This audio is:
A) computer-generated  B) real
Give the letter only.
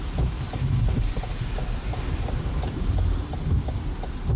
B